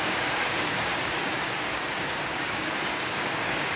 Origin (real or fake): fake